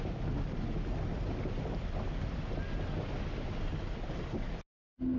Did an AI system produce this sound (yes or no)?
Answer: no